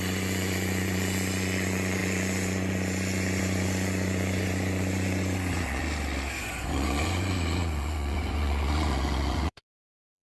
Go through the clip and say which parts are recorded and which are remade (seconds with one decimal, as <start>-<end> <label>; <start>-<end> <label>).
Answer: 0.0-5.8 remade; 5.8-6.4 recorded; 6.4-10.2 remade